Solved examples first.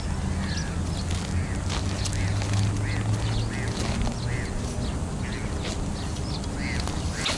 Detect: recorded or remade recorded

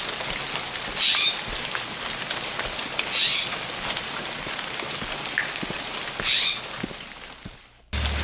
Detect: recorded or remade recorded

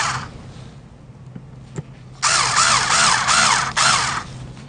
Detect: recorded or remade recorded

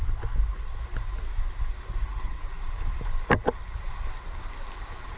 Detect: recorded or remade recorded